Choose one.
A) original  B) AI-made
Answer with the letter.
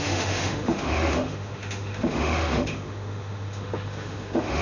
B